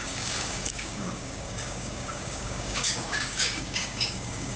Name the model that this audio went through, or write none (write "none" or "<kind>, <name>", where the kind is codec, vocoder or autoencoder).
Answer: codec, DAC